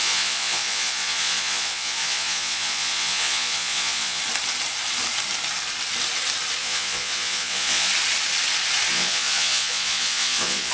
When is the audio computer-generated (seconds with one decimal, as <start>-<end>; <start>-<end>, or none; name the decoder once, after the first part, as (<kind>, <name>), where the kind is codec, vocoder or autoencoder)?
0.0-4.2 (vocoder, Vocos); 6.6-7.9; 8.9-10.7